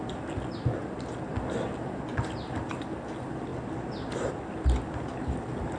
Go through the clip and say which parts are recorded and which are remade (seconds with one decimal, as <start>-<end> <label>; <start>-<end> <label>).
0.0-5.8 recorded